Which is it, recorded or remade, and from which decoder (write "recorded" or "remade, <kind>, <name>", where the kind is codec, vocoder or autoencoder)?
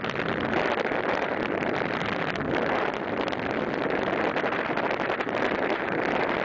remade, vocoder, BigVGAN v2